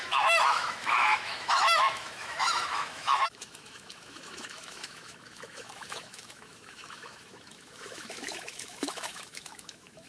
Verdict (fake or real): fake